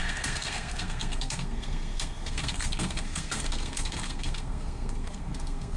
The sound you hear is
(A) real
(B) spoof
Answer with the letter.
B